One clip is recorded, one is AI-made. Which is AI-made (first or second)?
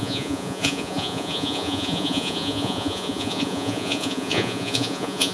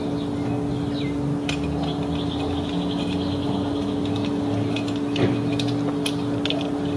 first